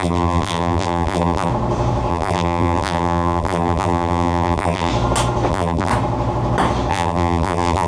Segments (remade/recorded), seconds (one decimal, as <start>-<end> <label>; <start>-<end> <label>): 0.0-1.5 remade; 1.5-2.1 recorded; 2.1-4.9 remade; 4.9-5.5 recorded; 5.5-5.9 remade; 5.9-6.9 recorded; 6.9-7.9 remade